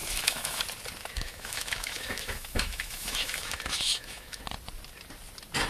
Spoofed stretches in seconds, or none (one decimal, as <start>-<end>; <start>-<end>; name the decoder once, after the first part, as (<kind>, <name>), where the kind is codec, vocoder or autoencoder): 0.0-0.6 (autoencoder, DAC-VAE); 1.0-4.4